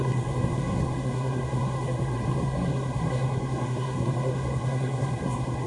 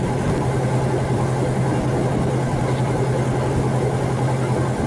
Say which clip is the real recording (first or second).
second